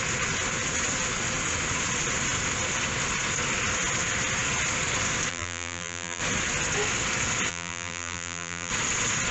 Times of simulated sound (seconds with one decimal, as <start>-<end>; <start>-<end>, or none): 5.3-6.2; 7.5-8.7